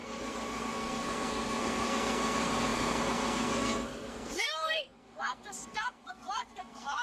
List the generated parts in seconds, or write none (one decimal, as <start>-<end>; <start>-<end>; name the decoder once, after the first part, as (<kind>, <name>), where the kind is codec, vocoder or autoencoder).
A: 0.0-7.0 (codec, SNAC)